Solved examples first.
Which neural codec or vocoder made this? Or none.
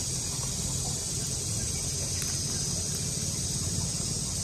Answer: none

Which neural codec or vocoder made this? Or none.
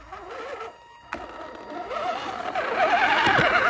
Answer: none